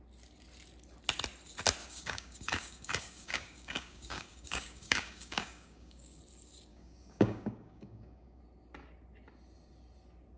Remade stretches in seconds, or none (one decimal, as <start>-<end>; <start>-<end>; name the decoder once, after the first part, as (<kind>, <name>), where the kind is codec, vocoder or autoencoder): 1.8-6.2 (codec, DAC); 6.7-8.4